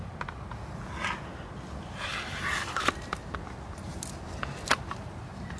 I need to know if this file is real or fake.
real